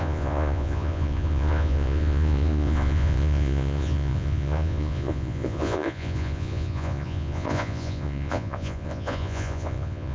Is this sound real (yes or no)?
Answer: no